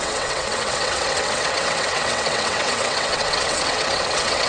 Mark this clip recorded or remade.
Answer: remade